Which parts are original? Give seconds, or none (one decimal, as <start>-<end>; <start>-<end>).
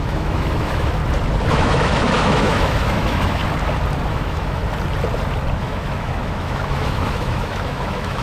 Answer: 1.0-1.5; 3.4-4.1; 4.6-5.6